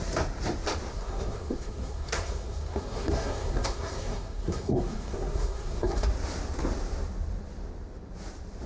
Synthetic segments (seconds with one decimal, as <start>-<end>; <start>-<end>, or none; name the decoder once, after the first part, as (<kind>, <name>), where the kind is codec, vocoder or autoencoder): 0.9-6.1 (codec, SNAC)